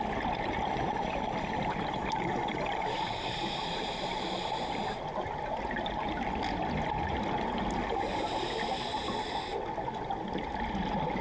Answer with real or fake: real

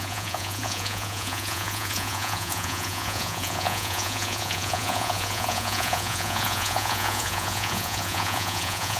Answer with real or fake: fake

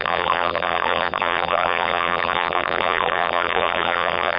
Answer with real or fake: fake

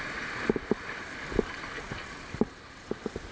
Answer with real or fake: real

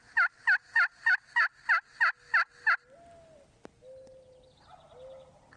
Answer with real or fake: real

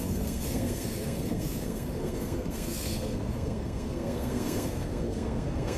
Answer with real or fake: fake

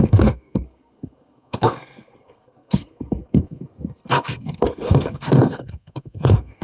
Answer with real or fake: fake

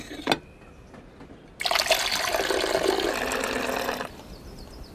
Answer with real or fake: real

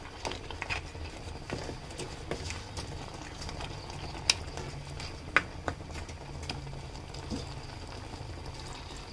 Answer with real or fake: real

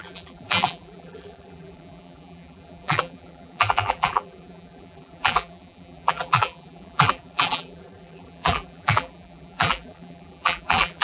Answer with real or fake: fake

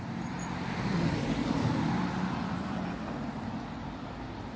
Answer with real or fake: real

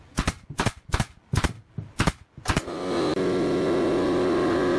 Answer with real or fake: real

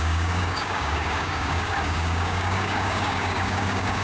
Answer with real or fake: fake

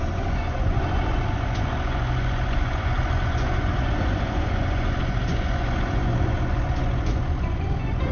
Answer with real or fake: fake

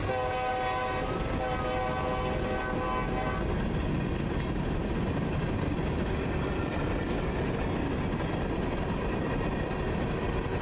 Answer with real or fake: real